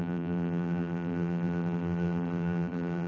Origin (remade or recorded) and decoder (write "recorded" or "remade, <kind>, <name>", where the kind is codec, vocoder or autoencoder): remade, vocoder, BigVGAN v2